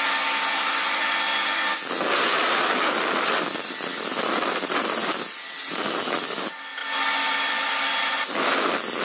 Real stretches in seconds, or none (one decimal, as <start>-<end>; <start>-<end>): 0.0-9.0